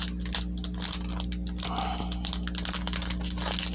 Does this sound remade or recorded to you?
recorded